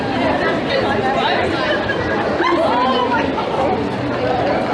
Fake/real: real